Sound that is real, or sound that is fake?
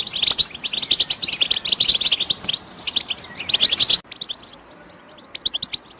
real